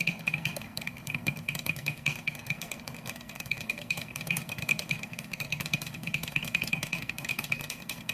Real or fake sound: fake